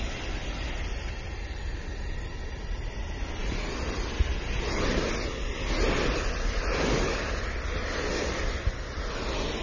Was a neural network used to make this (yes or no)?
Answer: no